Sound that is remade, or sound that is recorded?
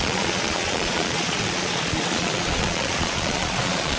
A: remade